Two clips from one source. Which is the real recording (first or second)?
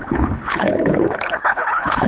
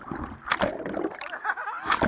second